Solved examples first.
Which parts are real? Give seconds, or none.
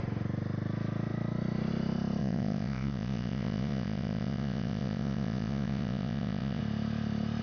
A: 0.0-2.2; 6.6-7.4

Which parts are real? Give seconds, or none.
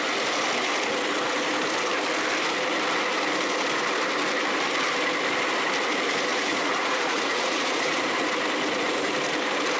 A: 0.0-6.3; 8.3-9.8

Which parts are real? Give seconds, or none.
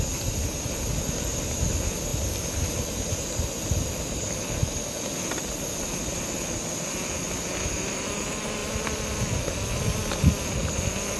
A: 0.0-11.2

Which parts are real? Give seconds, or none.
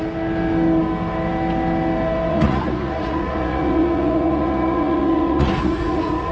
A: 0.0-2.3